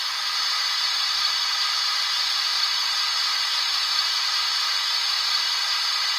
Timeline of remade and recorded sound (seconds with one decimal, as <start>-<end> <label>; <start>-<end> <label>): 0.0-6.2 recorded